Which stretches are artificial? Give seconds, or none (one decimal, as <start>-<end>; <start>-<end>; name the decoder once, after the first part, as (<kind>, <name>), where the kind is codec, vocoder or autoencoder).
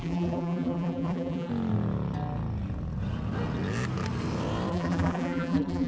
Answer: 0.0-1.5 (vocoder, BigVGAN v2); 4.7-5.9